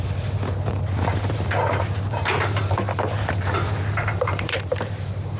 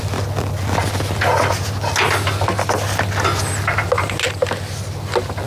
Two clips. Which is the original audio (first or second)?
second